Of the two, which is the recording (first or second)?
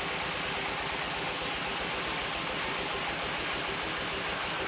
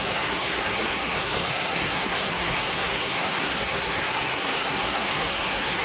first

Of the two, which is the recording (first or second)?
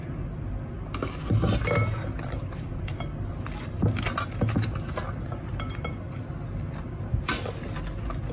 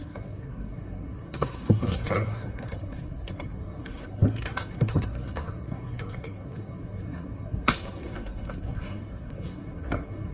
first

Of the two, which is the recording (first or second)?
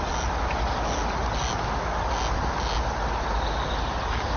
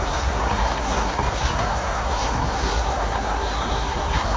first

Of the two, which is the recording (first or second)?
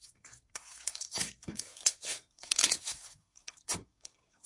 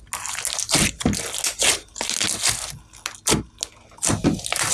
second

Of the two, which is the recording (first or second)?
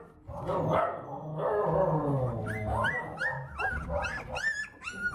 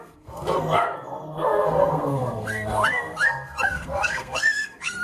first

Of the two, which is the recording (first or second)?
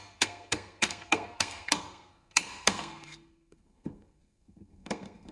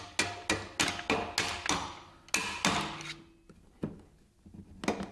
second